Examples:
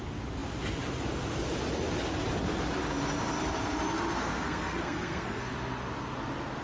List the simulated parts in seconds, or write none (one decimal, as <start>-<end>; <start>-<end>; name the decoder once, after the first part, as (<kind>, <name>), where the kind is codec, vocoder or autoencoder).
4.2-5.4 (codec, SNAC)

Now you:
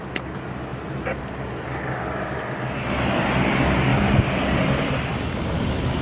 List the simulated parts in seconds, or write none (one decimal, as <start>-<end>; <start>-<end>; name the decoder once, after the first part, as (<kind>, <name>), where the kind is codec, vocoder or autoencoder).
none

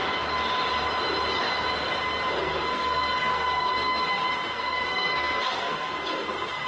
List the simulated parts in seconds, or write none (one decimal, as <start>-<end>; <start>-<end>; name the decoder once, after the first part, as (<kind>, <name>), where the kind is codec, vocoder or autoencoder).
2.4-6.7 (codec, SNAC)

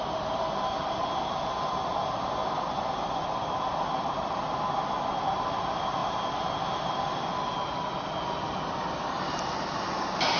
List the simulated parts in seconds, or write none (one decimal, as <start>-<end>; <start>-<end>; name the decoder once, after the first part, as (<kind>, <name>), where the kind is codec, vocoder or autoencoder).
none